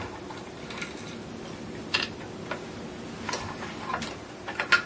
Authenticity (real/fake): real